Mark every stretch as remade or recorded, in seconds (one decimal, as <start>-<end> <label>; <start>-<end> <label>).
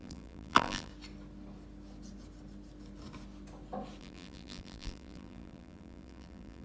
0.0-0.9 remade; 0.9-4.0 recorded; 4.0-6.6 remade